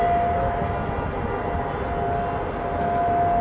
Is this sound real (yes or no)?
yes